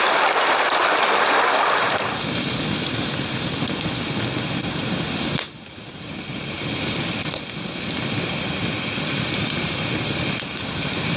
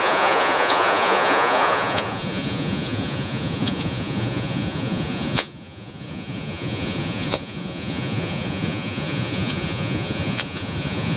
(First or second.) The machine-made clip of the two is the second